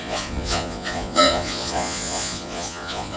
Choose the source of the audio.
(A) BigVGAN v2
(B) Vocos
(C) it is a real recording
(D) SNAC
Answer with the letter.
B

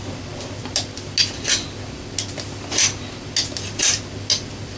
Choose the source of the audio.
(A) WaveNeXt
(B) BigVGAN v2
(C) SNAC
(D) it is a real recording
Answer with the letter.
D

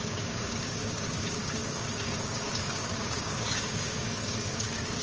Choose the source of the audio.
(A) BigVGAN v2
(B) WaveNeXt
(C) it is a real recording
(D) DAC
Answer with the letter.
D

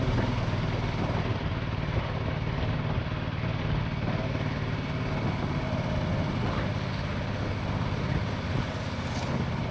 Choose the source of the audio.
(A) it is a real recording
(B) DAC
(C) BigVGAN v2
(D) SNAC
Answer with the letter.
A